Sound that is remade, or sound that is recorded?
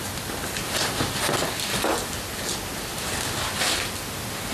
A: recorded